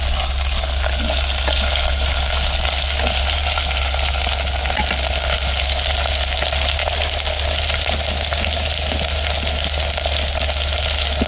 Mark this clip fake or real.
real